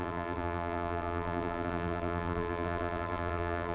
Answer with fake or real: fake